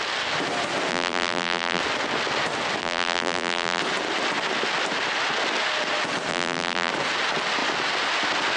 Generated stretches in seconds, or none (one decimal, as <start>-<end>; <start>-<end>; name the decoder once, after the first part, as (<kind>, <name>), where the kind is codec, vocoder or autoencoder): 0.9-1.8 (vocoder, BigVGAN v2); 2.8-3.8; 6.3-6.9